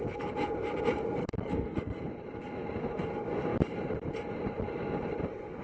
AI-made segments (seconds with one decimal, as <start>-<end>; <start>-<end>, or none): 1.2-2.0